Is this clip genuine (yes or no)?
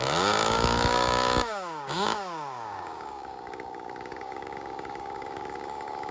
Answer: no